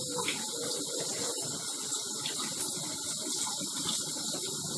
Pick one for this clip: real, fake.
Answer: real